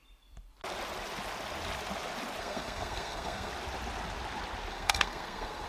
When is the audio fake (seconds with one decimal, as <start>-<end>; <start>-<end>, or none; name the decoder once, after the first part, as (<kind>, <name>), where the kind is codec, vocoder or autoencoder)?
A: 2.4-3.5 (codec, SNAC); 4.7-5.7